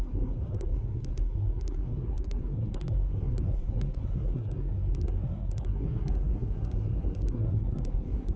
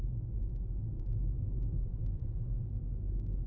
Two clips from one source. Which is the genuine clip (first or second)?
second